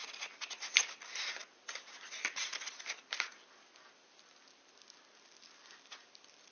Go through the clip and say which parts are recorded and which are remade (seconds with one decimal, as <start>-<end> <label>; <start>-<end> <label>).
0.0-6.5 recorded